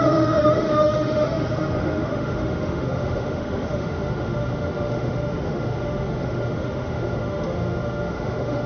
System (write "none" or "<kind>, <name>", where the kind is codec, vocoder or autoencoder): autoencoder, DAC-VAE